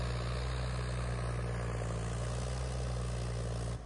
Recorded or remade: recorded